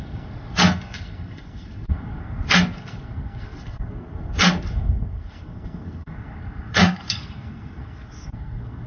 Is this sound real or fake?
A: fake